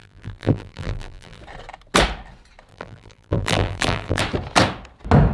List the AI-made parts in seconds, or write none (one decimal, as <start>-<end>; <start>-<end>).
0.0-1.4; 2.7-4.2